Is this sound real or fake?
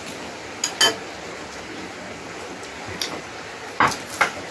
real